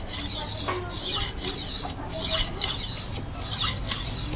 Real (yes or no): yes